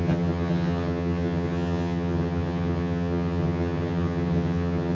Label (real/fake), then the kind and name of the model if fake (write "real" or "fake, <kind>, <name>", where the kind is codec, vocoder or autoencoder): fake, vocoder, HiFi-GAN